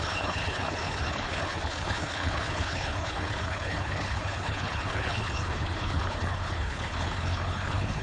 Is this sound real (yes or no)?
no